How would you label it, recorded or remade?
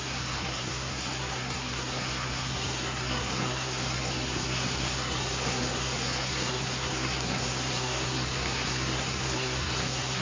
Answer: remade